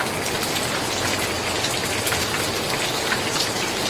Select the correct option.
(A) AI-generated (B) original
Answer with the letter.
B